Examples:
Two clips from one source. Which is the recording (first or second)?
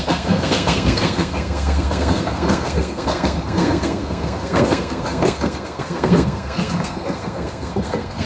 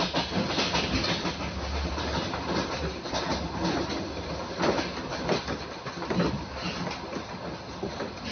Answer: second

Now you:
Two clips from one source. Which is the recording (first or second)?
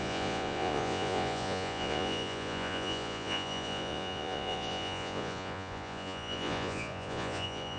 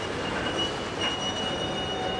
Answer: second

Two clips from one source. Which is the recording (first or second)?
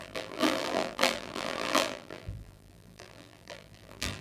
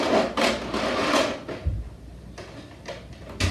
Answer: second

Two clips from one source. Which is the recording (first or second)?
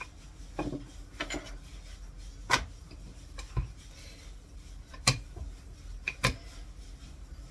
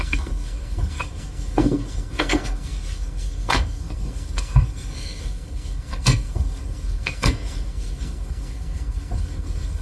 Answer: first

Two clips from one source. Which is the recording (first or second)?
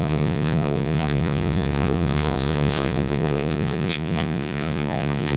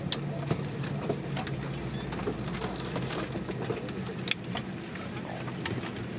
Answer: second